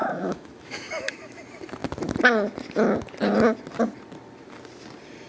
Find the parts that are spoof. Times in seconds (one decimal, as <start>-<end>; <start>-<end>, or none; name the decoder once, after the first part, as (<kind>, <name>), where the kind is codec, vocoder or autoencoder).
0.0-1.4 (autoencoder, DAC-VAE)